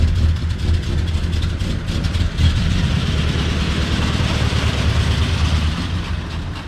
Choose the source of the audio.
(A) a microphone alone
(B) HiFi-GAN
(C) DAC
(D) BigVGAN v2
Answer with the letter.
D